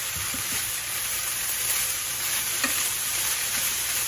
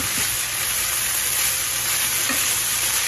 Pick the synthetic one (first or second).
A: first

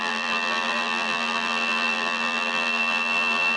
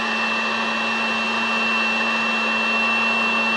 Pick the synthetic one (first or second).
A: first